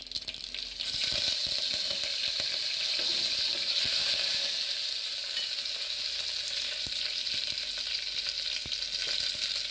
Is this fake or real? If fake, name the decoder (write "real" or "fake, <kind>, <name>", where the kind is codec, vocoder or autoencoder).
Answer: real